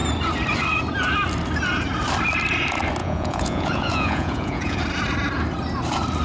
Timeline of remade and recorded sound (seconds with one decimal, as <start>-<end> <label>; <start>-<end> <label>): 0.0-3.0 recorded; 3.0-4.8 remade; 4.8-6.2 recorded

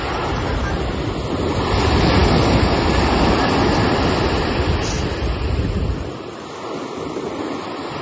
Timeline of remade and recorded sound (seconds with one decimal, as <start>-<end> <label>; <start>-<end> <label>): 0.0-8.0 recorded

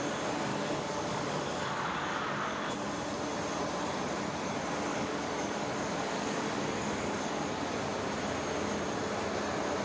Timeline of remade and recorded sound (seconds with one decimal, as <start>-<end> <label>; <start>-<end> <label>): 0.0-0.5 recorded; 0.5-2.7 remade; 2.7-4.9 recorded; 4.9-7.4 remade; 7.4-9.8 recorded

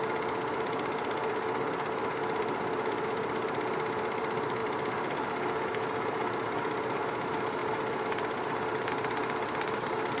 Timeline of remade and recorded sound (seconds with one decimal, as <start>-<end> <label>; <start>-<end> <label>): 0.0-10.2 recorded